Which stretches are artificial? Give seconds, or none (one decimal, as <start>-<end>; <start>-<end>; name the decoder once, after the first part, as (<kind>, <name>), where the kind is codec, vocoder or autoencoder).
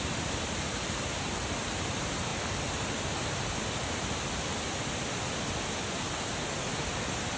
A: none